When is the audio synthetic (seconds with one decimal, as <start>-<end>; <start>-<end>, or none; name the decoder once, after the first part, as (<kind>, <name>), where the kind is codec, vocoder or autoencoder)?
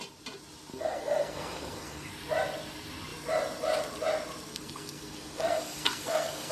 0.7-2.1 (codec, SNAC); 4.5-6.5